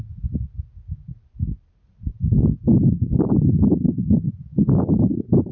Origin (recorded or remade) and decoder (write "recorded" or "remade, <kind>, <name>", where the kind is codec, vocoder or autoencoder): recorded